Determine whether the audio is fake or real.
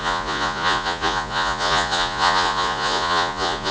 fake